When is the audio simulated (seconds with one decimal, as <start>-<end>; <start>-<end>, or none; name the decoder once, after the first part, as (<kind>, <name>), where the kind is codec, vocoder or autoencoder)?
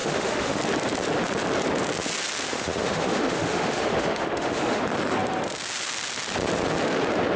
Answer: 0.0-0.6 (autoencoder, DAC-VAE); 2.5-4.8